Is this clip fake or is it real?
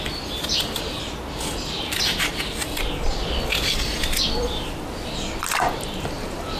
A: real